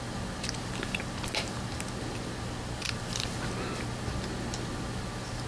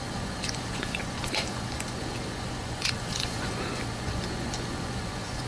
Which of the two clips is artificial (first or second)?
second